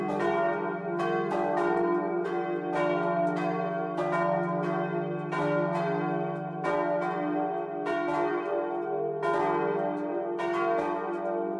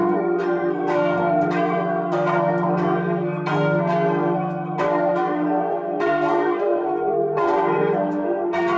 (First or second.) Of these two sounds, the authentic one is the first